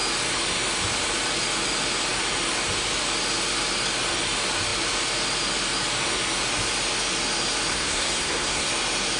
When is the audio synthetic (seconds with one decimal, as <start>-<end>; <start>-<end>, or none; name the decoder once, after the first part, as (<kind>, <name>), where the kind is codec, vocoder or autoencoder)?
7.7-8.7 (codec, SNAC)